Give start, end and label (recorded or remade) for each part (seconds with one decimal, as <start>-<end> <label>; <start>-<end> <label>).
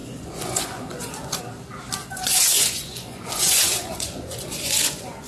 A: 0.0-1.4 remade; 1.4-2.0 recorded; 2.0-5.3 remade